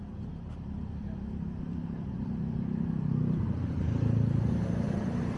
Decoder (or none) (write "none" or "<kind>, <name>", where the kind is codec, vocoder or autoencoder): vocoder, BigVGAN v2